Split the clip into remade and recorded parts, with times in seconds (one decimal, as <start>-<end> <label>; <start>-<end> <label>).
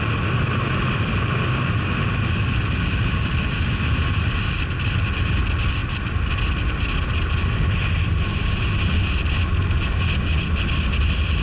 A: 0.0-11.4 recorded